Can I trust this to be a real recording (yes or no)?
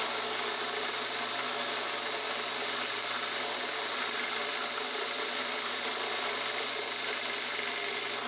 yes